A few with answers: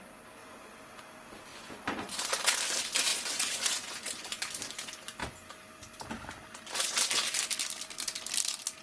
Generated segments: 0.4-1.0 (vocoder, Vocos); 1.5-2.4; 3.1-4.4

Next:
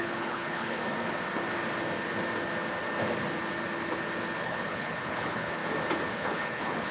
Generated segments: 0.0-0.8 (codec, HILCodec); 4.4-5.6; 6.1-6.9

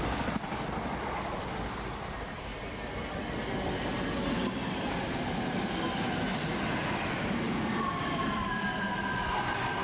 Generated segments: 0.0-3.9 (vocoder, BigVGAN v2); 4.7-9.8

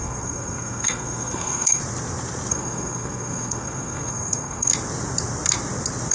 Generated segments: 0.0-1.8 (codec, SNAC); 2.5-4.7

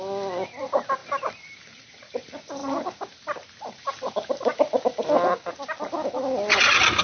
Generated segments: none

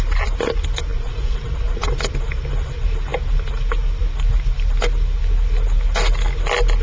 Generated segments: 0.9-1.9 (vocoder, Vocos)

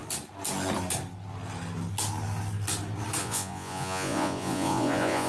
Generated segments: 3.2-5.3 (vocoder, Vocos)

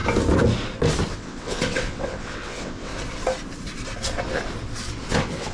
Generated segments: 1.1-2.9 (vocoder, WaveNeXt); 5.1-5.5